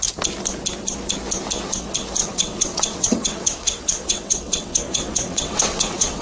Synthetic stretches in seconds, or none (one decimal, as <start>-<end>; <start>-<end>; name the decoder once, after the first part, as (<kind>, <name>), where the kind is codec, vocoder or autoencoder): 2.2-6.2 (vocoder, WaveNeXt)